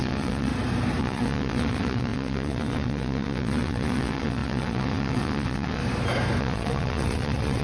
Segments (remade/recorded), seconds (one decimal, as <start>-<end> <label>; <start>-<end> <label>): 0.0-0.5 remade; 0.5-1.0 recorded; 1.0-5.8 remade; 5.8-6.4 recorded; 6.4-7.6 remade